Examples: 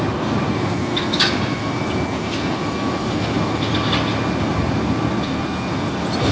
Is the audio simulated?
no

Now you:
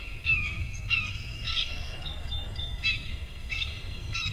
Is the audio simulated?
yes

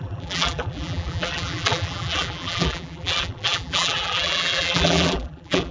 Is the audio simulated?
yes